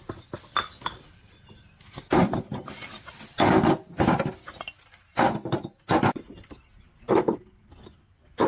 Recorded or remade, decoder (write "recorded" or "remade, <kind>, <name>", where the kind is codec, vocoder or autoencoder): recorded